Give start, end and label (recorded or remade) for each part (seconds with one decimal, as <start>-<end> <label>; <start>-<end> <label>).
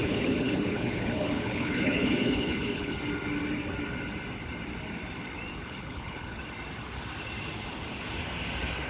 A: 0.0-2.9 remade; 2.9-5.5 recorded; 5.5-6.4 remade; 6.4-8.9 recorded